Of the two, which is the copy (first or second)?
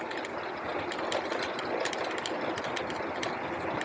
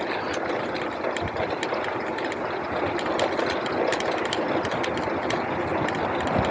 second